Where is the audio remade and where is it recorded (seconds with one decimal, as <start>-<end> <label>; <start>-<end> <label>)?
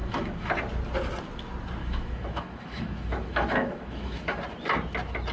0.0-0.5 remade; 0.5-1.8 recorded; 1.8-4.4 remade; 4.4-5.3 recorded